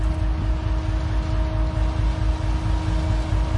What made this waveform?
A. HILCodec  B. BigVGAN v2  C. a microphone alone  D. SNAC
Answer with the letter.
C